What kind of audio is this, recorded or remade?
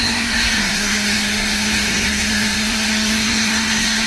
remade